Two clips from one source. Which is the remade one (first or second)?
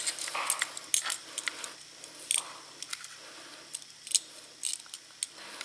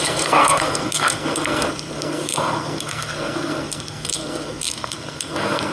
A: second